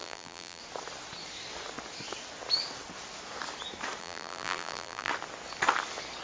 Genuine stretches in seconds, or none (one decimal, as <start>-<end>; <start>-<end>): 0.6-4.0; 5.1-6.2